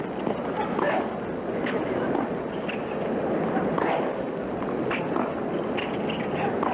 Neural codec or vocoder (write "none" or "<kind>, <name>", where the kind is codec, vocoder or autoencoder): none